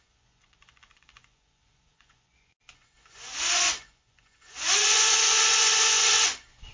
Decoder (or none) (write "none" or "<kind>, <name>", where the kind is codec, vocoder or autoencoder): vocoder, Vocos